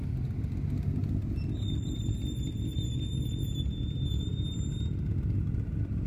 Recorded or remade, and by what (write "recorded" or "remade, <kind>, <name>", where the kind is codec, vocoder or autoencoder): recorded